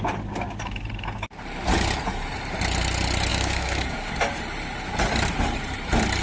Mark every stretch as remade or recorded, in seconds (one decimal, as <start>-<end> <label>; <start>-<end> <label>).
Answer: 0.0-3.3 recorded; 3.3-4.1 remade; 4.1-6.2 recorded